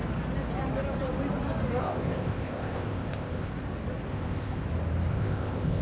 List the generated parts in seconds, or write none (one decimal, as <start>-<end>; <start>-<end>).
1.8-3.5; 4.1-4.6; 5.1-5.8